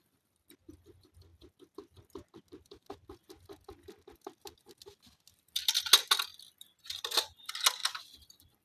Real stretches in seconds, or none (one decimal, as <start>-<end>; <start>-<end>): 0.0-8.6